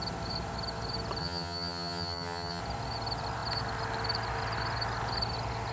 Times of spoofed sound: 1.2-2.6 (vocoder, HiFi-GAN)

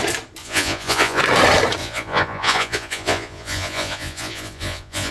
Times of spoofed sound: 0.4-1.2 (vocoder, Vocos); 1.8-5.1

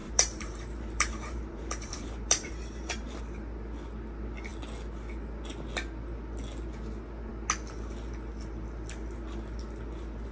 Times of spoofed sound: 0.0-3.2 (vocoder, BigVGAN v2)

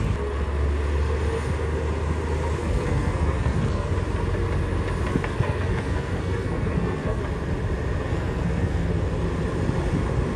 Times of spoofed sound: 2.6-3.9 (codec, SNAC); 5.1-7.2; 8.1-8.9